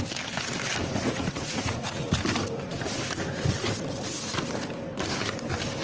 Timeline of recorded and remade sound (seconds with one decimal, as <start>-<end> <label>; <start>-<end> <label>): 0.0-0.9 recorded; 0.9-2.1 remade; 2.1-5.8 recorded